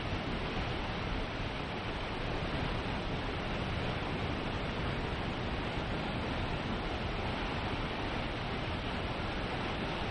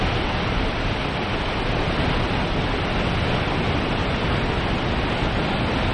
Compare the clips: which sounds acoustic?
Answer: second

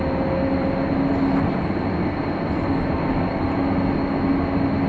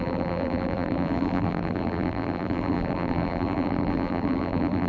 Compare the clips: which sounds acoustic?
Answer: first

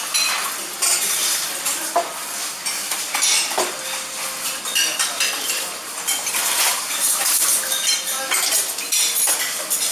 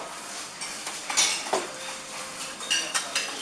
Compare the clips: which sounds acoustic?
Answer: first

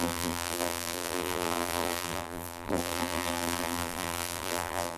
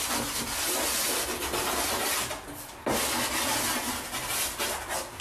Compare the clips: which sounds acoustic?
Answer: second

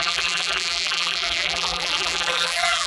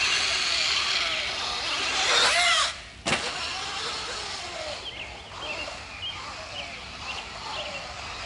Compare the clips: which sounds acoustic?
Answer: second